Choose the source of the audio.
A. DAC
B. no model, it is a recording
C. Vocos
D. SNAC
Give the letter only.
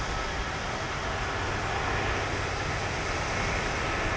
B